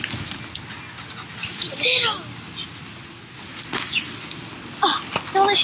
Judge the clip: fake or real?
real